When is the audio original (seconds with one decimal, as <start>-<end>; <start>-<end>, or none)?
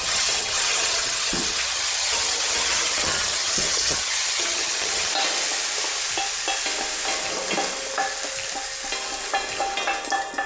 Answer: 5.1-10.5